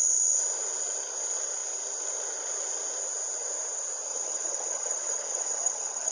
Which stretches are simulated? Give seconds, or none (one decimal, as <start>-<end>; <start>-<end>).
4.1-6.1